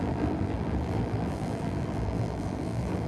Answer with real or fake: fake